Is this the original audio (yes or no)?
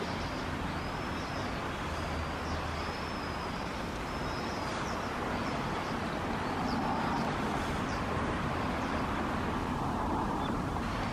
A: yes